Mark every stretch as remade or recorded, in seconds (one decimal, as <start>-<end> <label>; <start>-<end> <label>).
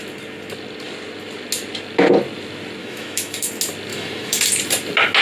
0.0-2.8 recorded; 2.8-3.5 remade; 3.5-3.9 recorded; 3.9-4.4 remade; 4.4-5.2 recorded